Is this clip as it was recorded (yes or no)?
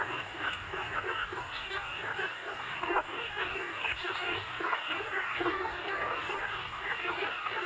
no